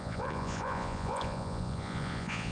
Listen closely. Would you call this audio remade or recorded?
remade